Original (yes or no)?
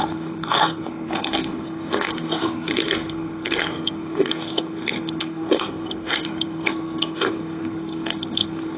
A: no